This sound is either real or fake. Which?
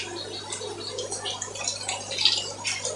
real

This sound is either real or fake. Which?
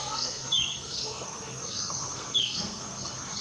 fake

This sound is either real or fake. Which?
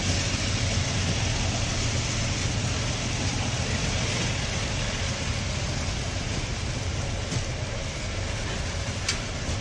real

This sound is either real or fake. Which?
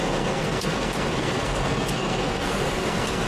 fake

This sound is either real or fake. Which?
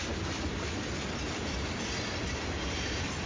real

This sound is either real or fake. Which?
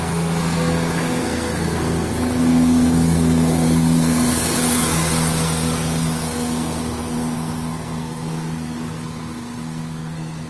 fake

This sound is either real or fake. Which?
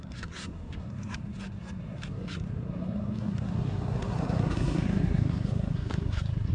fake